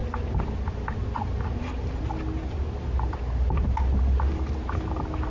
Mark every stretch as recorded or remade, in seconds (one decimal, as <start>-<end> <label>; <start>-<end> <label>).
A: 0.0-5.3 recorded